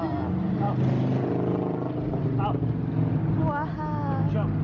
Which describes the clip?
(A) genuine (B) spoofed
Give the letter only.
A